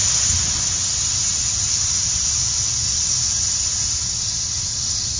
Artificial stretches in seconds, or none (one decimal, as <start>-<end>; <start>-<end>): none